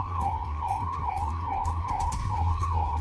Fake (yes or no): yes